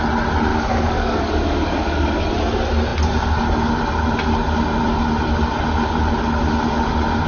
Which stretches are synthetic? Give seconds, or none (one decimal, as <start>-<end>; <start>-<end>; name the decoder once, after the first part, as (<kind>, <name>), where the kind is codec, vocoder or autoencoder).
0.5-2.2 (codec, DAC)